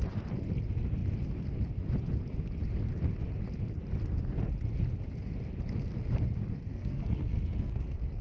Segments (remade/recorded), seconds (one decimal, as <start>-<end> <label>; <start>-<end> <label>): 0.0-6.7 recorded; 6.7-8.2 remade